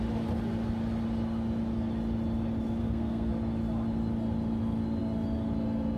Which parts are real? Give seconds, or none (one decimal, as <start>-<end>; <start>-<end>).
0.0-2.8; 3.3-6.0